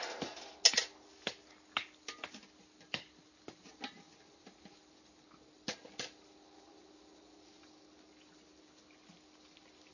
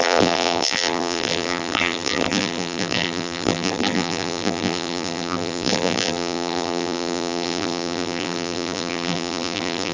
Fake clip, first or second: second